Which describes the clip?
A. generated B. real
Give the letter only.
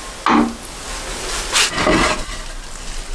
B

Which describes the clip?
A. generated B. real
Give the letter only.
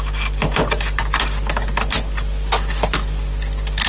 B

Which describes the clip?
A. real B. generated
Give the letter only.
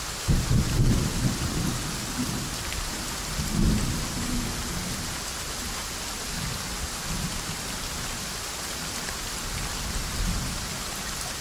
A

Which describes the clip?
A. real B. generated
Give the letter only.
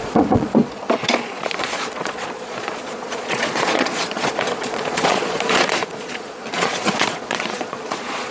B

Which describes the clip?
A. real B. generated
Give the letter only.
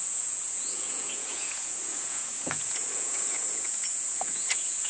B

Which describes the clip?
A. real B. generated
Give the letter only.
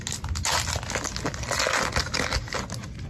A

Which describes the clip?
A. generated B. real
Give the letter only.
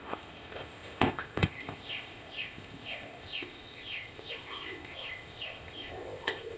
A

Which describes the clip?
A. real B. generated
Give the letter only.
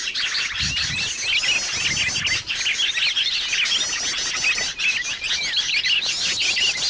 A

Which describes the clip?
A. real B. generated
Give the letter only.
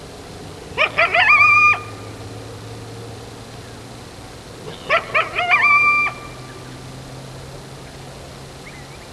A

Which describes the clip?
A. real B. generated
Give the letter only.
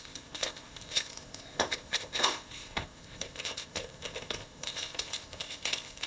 B